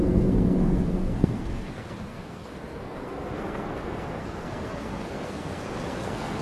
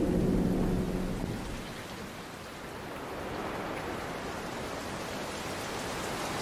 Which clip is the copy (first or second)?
first